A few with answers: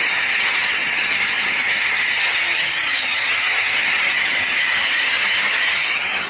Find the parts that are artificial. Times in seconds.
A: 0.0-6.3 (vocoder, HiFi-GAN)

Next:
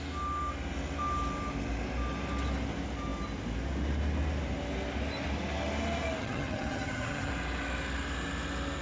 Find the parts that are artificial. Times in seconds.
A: 6.2-7.3 (vocoder, HiFi-GAN)